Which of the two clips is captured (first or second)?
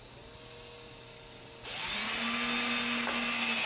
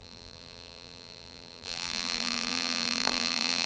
first